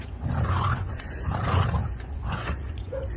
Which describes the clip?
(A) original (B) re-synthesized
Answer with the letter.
B